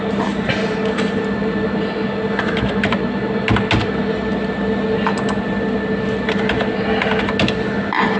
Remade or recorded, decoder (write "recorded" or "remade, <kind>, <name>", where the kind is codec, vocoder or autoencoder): recorded